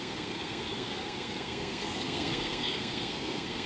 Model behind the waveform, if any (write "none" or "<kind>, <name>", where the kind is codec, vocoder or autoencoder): codec, SNAC